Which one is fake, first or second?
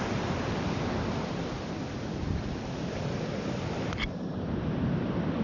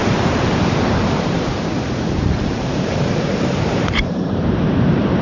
second